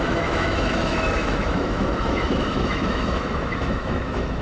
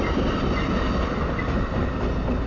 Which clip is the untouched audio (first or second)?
second